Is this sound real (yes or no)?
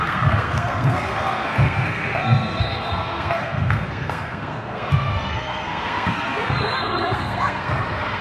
no